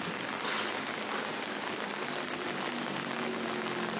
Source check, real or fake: real